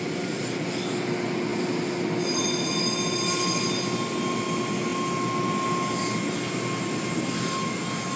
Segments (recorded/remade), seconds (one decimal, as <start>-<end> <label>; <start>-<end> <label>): 0.0-8.2 recorded